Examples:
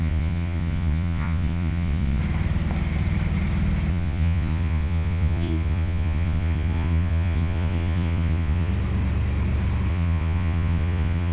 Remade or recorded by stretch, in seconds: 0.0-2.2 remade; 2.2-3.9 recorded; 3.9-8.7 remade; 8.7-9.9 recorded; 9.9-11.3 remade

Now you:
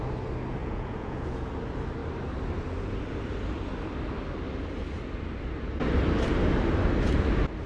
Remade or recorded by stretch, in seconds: 0.0-0.6 recorded; 0.6-1.5 remade; 1.5-7.7 recorded

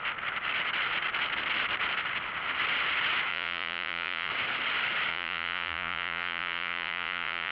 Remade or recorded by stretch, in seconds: 0.0-3.3 recorded; 3.3-4.3 remade; 4.3-5.1 recorded; 5.1-7.5 remade

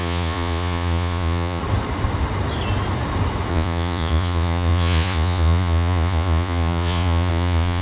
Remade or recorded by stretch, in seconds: 0.0-1.6 remade; 1.6-3.5 recorded; 3.5-7.8 remade

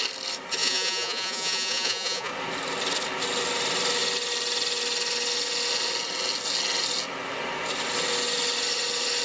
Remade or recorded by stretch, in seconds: 0.0-0.6 recorded; 0.6-2.3 remade; 2.3-9.2 recorded

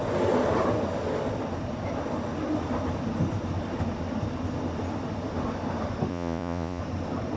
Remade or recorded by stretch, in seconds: 0.0-6.1 recorded; 6.1-6.8 remade; 6.8-7.4 recorded